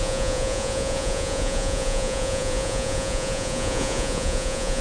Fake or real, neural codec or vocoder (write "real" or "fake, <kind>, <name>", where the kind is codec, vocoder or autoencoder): fake, vocoder, Vocos